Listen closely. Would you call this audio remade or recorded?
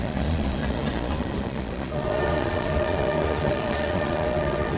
remade